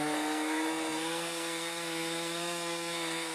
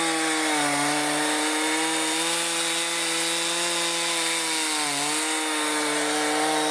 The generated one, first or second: first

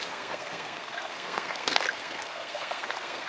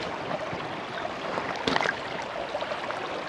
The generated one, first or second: first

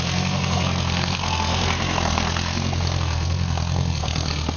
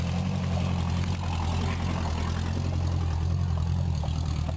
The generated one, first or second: first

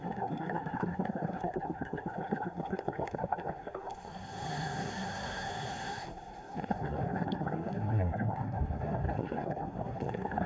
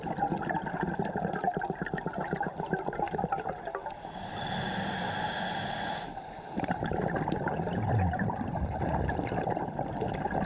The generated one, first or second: first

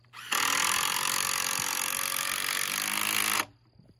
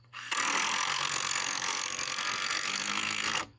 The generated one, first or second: second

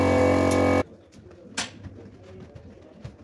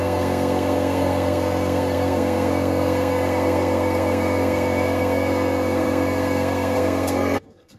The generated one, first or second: second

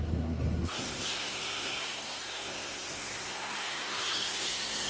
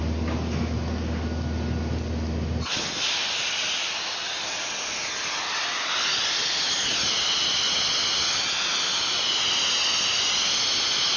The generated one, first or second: first